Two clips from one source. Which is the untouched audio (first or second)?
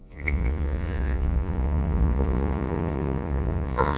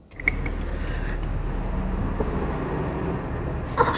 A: second